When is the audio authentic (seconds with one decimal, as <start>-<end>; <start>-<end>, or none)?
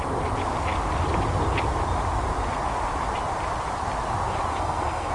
0.0-4.5